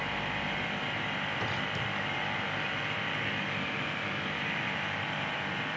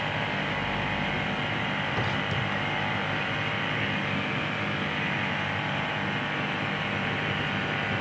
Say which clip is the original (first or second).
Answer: second